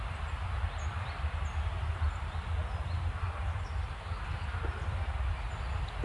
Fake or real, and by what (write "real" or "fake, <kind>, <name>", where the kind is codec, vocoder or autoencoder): real